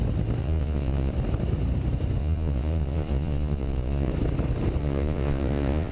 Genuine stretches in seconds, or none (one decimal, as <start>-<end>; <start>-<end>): 0.0-0.4; 1.1-2.2; 4.1-4.8

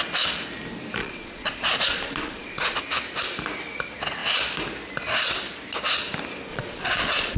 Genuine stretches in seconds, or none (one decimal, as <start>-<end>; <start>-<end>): 0.0-1.0; 2.8-6.5

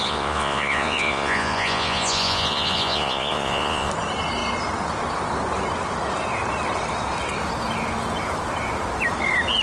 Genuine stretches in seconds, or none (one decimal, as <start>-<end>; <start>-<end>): 3.9-9.6

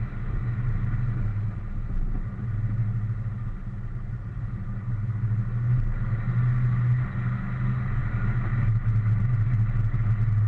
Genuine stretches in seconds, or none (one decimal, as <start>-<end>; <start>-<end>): 0.0-10.5